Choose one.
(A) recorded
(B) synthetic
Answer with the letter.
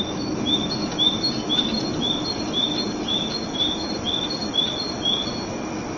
A